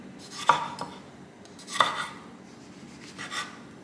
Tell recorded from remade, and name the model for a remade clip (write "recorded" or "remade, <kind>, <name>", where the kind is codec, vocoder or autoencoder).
recorded